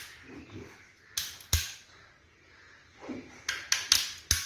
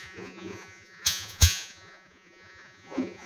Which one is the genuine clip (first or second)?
first